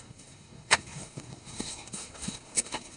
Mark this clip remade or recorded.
remade